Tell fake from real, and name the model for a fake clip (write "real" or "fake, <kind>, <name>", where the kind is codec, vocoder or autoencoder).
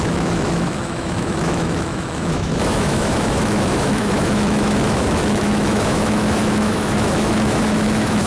fake, autoencoder, DAC-VAE